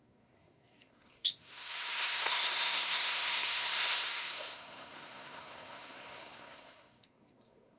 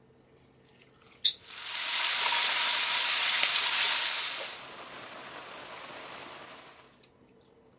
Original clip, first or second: second